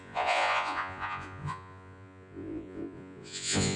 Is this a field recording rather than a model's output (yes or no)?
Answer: no